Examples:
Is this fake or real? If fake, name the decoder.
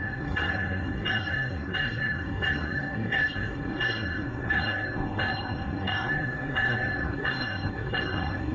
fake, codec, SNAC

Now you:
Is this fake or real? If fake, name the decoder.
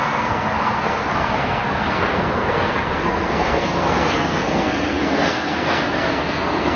fake, codec, SNAC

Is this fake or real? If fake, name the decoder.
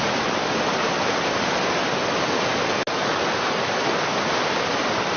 real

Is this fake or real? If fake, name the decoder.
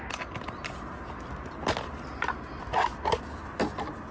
real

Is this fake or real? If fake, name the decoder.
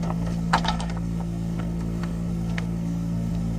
fake, codec, SNAC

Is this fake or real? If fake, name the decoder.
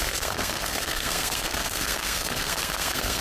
fake, codec, SNAC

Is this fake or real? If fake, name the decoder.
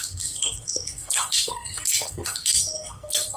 fake, codec, SNAC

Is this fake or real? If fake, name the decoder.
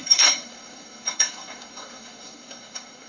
fake, codec, SNAC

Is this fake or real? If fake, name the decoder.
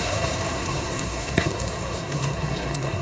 fake, codec, SNAC